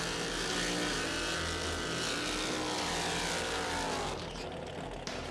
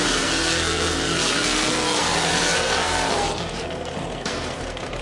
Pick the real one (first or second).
first